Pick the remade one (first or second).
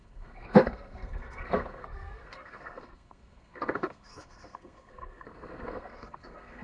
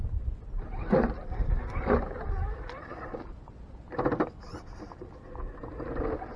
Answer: first